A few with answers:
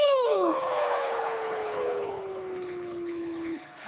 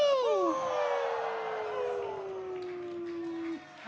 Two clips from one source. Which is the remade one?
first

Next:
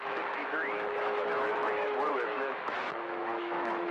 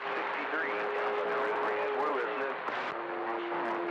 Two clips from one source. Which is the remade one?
first